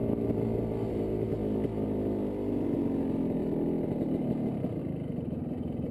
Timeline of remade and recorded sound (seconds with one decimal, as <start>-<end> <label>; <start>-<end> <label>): 0.0-0.9 recorded; 0.9-1.3 remade; 1.3-4.8 recorded; 4.8-5.9 remade